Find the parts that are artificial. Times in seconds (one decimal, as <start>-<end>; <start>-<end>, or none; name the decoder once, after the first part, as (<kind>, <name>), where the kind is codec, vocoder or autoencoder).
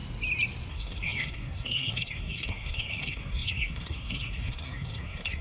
0.7-5.4 (codec, SNAC)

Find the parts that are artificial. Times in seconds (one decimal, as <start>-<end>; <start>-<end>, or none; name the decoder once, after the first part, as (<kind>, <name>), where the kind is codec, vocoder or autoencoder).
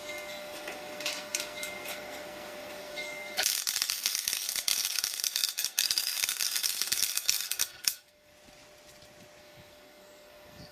0.0-8.3 (codec, SNAC); 9.4-10.7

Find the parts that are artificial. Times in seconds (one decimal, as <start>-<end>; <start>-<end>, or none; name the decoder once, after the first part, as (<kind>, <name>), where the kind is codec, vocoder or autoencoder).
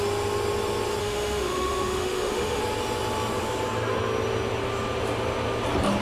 1.0-2.6 (autoencoder, DAC-VAE)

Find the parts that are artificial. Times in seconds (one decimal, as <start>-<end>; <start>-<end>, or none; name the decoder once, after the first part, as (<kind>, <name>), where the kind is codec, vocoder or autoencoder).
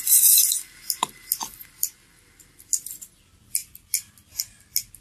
none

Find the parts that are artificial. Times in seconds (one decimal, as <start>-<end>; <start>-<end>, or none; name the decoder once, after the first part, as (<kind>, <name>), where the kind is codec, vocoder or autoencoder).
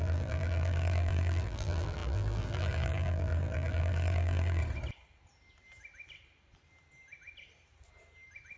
0.0-4.6 (vocoder, BigVGAN v2)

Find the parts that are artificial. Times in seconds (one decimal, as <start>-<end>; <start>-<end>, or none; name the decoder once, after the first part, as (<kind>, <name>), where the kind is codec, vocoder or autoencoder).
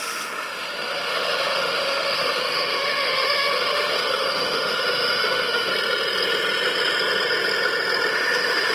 0.0-5.7 (autoencoder, DAC-VAE); 8.1-8.7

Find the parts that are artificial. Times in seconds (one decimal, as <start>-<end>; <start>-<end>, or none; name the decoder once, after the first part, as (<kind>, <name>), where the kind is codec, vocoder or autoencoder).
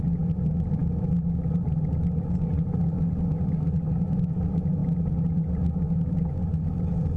none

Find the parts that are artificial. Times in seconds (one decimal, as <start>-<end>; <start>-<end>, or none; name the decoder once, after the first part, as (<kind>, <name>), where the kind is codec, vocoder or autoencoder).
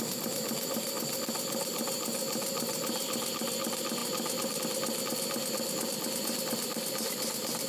none